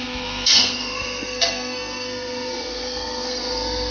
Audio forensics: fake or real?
fake